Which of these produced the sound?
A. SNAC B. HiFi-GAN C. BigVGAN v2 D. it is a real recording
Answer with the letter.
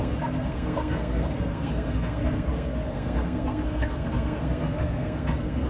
A